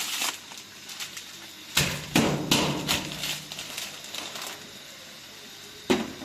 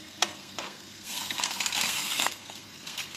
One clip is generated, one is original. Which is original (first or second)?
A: first